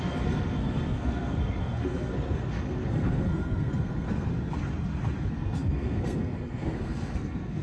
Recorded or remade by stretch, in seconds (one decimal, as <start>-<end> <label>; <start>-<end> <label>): 0.0-4.3 remade; 4.3-5.3 recorded; 5.3-7.6 remade